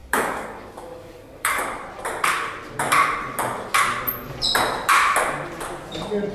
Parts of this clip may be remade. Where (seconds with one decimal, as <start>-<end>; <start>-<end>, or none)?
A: 0.0-1.6